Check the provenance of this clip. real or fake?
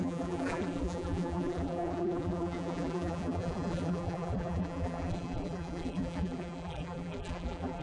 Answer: fake